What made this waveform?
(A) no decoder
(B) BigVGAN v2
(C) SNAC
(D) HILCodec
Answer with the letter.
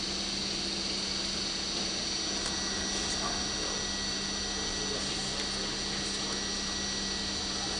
A